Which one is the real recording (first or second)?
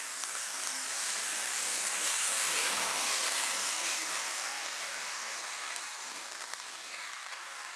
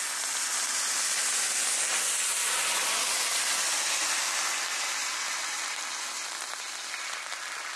second